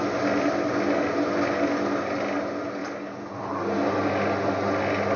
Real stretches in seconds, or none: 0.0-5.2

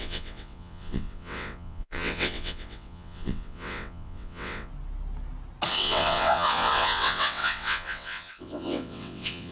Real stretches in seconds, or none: 4.7-5.7

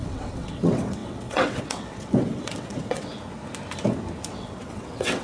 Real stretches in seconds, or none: 3.1-4.3